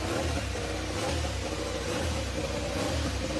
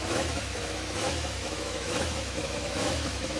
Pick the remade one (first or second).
second